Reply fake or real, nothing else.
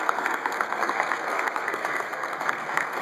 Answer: fake